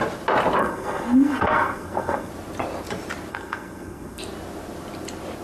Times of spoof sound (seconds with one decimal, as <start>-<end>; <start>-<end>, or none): 0.6-2.3; 3.3-4.2